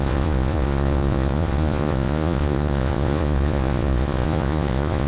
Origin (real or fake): fake